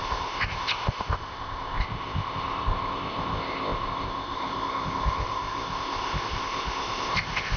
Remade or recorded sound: remade